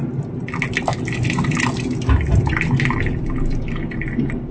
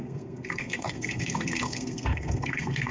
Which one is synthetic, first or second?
second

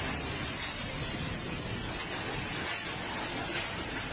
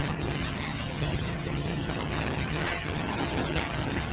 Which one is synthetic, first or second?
second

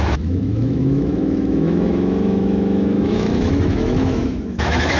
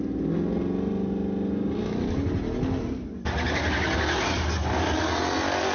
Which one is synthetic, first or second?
first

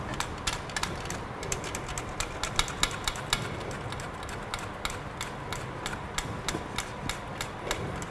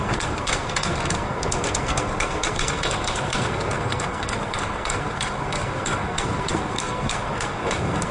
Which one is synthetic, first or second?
second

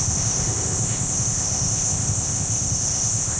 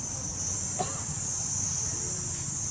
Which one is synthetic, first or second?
first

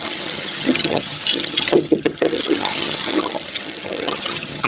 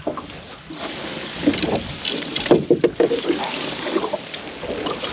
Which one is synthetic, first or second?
first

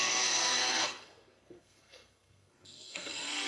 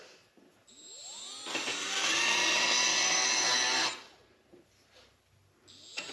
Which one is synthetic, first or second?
first